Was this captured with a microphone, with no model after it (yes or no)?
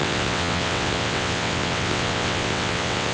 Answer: no